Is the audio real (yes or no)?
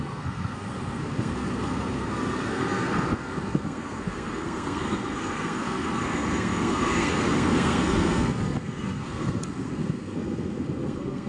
no